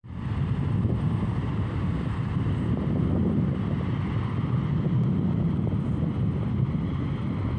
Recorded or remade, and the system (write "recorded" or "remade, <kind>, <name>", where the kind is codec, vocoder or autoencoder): recorded